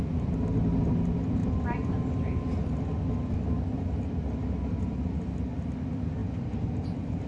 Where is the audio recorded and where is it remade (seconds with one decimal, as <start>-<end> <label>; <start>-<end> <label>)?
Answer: 0.0-7.3 recorded